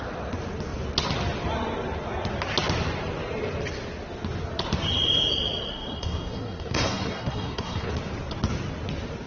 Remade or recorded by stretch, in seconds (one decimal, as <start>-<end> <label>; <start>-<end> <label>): 0.0-5.7 recorded; 5.7-7.9 remade; 7.9-9.3 recorded